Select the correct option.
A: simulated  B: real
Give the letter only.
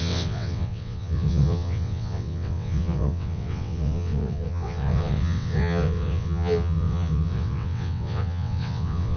A